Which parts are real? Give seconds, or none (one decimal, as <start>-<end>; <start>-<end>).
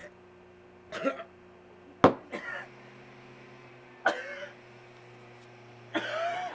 0.0-6.5